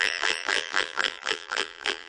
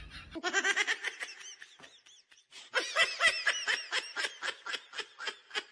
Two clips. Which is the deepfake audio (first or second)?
first